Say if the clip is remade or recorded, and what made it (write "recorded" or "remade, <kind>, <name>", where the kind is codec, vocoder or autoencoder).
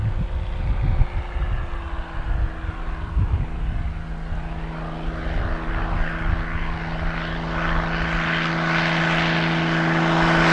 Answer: recorded